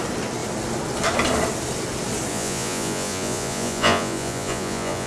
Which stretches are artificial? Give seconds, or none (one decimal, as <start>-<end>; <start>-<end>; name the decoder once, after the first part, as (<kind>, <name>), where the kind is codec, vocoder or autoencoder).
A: 2.3-5.1 (vocoder, Vocos)